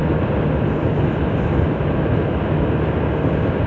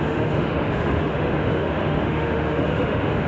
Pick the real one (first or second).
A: first